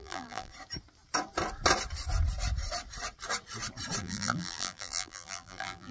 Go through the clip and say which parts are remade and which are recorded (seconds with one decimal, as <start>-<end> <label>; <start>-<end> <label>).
0.0-0.5 remade; 0.5-4.0 recorded; 4.0-5.9 remade